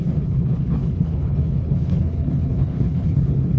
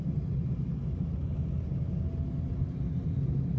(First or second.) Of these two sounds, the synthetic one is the first